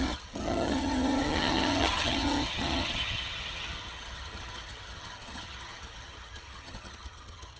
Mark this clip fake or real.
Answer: fake